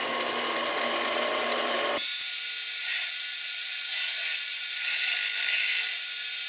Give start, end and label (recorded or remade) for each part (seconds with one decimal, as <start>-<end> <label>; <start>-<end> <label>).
0.0-2.8 recorded; 2.8-5.1 remade; 5.1-6.5 recorded